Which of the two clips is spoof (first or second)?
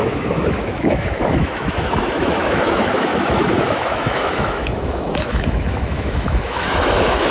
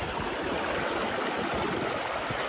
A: first